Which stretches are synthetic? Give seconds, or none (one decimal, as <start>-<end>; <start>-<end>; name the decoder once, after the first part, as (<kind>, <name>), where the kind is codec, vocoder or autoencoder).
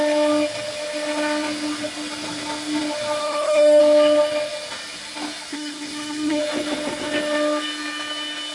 3.2-3.8 (codec, SNAC); 5.5-6.4